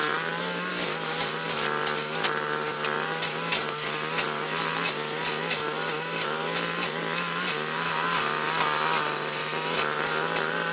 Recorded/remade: recorded